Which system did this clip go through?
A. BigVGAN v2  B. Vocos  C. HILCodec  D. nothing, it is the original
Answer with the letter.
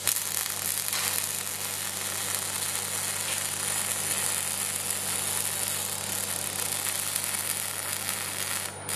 D